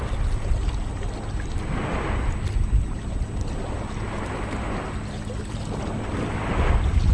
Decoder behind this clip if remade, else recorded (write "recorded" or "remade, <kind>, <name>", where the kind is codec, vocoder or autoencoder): recorded